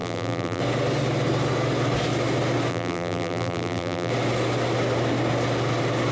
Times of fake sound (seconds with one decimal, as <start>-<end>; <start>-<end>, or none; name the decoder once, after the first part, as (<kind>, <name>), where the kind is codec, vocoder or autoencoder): 0.0-0.6 (vocoder, BigVGAN v2); 2.7-4.1

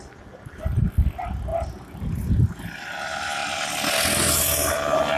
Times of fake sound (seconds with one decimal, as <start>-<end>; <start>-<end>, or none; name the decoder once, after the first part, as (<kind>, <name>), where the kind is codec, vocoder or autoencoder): none

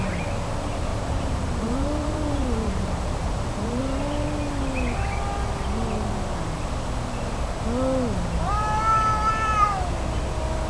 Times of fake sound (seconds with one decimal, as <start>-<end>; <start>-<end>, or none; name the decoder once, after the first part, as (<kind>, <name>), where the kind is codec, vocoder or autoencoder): 0.9-3.8 (vocoder, BigVGAN v2)

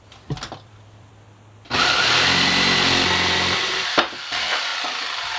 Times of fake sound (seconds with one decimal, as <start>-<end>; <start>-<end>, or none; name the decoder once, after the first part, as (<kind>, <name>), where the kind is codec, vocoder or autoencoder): 0.0-1.1 (vocoder, BigVGAN v2); 4.3-4.7

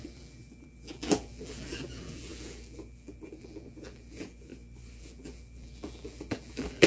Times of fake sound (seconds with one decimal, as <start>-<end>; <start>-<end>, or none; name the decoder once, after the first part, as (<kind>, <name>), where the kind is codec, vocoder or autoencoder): 0.0-4.5 (vocoder, BigVGAN v2); 5.0-6.9

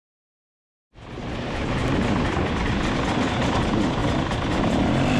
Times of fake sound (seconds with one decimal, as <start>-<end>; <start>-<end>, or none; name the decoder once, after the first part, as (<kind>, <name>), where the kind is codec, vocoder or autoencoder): 0.0-4.0 (vocoder, BigVGAN v2); 4.6-5.2

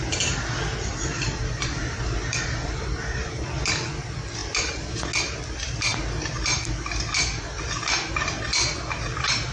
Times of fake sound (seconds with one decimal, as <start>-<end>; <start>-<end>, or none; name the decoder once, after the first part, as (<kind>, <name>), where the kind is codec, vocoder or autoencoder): 1.1-3.6 (vocoder, BigVGAN v2); 4.4-5.1